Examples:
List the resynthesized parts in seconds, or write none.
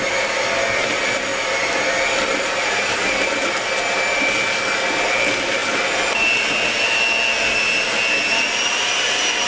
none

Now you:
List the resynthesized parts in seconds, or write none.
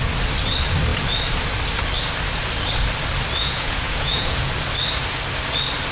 3.4-4.5 (vocoder, Vocos)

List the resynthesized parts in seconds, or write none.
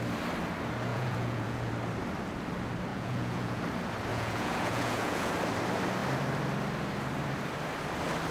0.9-1.7 (vocoder, Vocos); 2.9-3.6; 4.1-5.3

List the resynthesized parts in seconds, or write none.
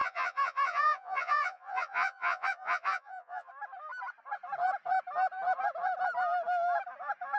0.0-3.5 (vocoder, Vocos)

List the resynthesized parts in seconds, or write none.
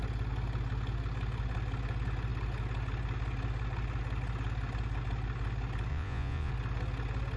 5.9-6.5 (vocoder, Vocos)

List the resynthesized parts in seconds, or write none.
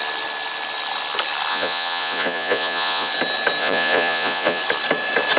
1.5-3.1 (vocoder, Vocos); 3.6-4.6